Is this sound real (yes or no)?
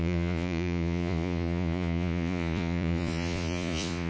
no